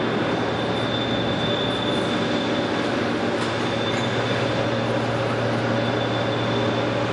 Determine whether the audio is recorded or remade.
recorded